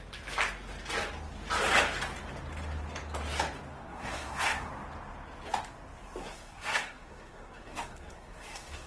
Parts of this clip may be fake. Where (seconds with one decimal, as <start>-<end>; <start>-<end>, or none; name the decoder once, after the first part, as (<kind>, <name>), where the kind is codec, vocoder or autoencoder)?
3.8-4.7 (codec, SNAC); 6.2-8.9